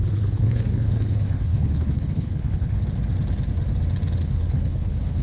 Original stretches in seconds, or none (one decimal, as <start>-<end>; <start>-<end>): 2.8-4.2